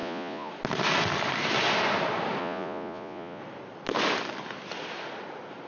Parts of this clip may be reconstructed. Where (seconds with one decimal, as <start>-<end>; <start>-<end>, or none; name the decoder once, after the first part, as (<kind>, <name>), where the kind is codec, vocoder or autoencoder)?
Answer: 0.0-0.5 (vocoder, Vocos); 2.4-3.4

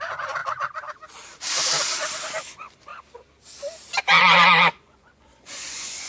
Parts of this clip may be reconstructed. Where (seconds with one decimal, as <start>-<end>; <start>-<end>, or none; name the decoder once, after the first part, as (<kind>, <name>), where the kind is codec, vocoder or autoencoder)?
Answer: 0.0-0.4 (vocoder, Vocos); 2.4-2.9; 4.2-6.1

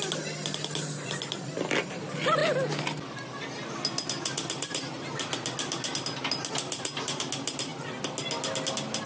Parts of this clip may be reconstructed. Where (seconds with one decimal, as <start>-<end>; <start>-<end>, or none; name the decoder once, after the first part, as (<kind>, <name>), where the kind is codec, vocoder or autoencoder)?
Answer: none

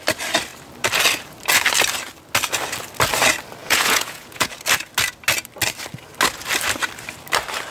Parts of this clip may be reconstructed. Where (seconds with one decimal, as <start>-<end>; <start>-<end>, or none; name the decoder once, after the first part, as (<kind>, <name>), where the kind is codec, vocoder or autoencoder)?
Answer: 3.6-4.5 (vocoder, Vocos)